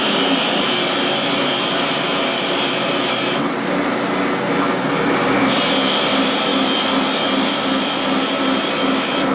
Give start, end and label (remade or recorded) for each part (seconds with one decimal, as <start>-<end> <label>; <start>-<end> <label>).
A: 0.0-9.3 recorded